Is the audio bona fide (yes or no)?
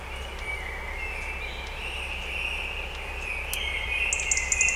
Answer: yes